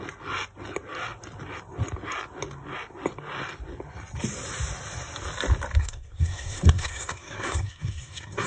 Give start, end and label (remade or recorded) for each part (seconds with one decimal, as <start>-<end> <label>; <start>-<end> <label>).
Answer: 0.0-5.8 recorded; 5.8-8.5 remade